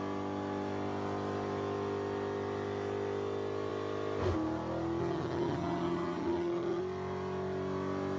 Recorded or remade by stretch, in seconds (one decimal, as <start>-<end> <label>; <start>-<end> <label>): 0.0-5.0 recorded; 5.0-6.8 remade; 6.8-8.2 recorded